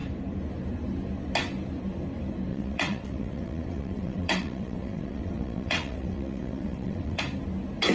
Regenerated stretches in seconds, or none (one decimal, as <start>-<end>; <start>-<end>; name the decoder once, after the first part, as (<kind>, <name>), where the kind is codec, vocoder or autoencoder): 2.5-7.2 (vocoder, WaveNeXt)